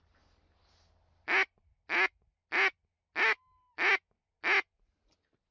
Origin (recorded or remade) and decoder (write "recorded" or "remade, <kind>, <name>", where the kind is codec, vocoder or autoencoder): recorded